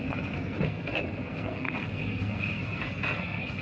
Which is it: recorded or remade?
remade